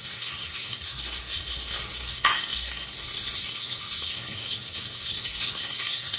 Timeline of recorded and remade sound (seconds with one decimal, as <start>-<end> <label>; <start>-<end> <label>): 0.0-6.2 remade